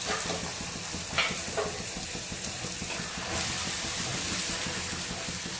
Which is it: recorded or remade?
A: recorded